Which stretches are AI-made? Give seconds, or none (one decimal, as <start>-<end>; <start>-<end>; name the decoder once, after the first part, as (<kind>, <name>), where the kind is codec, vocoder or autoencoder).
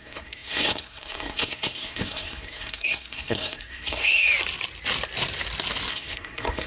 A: 0.0-4.3 (codec, SNAC); 5.9-6.7